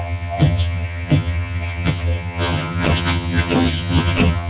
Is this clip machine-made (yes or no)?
yes